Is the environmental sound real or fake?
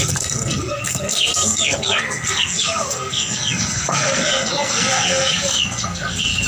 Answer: fake